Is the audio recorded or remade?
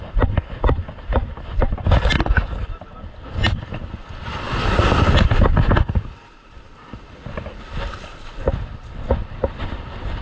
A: recorded